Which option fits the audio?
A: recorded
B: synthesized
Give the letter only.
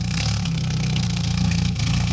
B